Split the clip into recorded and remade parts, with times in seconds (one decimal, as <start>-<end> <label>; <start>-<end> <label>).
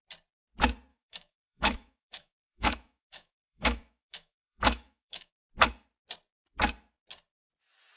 0.0-0.9 recorded; 0.9-5.3 remade; 5.3-8.0 recorded